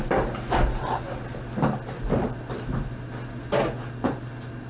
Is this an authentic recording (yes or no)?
yes